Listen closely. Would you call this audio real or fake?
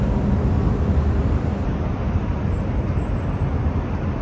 real